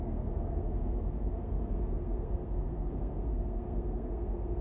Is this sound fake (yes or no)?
yes